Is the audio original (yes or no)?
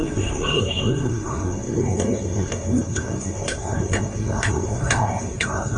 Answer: no